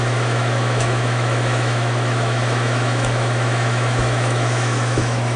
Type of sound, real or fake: fake